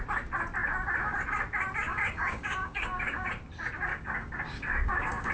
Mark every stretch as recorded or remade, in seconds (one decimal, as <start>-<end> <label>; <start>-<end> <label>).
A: 0.0-1.9 recorded; 1.9-3.3 remade; 3.3-3.9 recorded; 3.9-5.3 remade